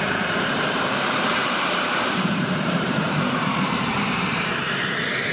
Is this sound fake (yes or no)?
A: yes